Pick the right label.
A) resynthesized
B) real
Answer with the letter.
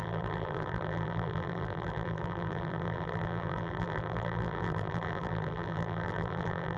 A